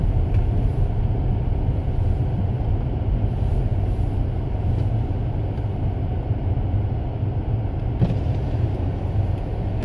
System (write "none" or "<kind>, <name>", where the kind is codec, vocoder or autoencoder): none